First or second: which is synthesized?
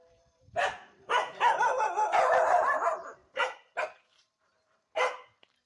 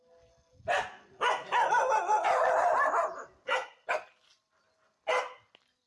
first